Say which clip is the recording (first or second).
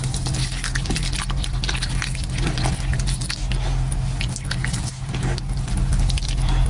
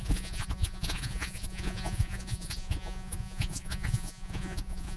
first